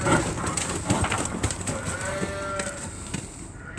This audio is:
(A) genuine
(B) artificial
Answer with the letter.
A